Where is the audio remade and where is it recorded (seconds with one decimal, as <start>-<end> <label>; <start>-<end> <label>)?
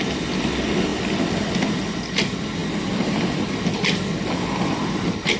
0.0-5.4 recorded